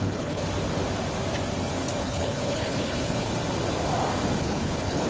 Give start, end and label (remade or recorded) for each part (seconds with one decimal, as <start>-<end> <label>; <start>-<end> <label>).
0.0-0.4 remade; 0.4-2.0 recorded; 2.0-3.3 remade; 3.3-4.4 recorded; 4.4-5.1 remade